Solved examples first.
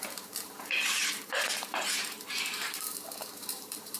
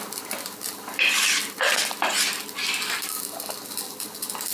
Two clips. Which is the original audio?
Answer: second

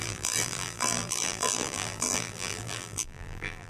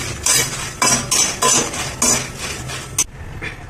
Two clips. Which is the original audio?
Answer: second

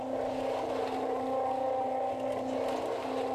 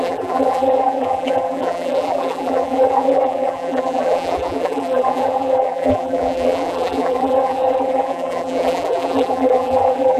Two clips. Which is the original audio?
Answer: first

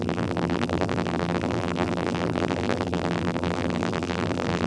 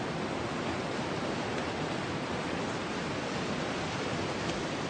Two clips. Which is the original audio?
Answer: second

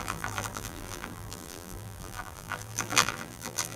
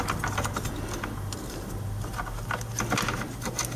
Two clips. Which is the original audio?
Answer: second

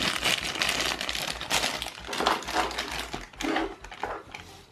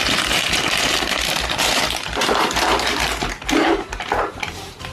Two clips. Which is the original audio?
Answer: first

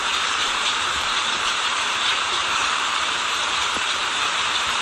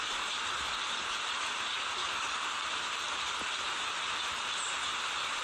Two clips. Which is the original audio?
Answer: second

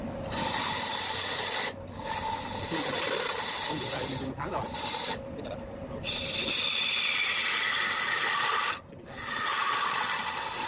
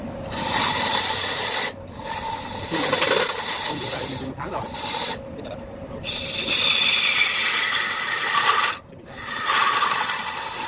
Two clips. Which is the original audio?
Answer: first